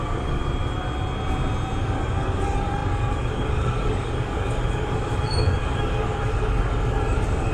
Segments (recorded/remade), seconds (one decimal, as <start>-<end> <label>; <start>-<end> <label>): 0.0-0.4 remade; 0.4-1.8 recorded; 1.8-7.5 remade